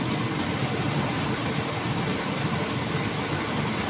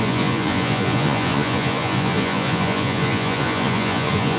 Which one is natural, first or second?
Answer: first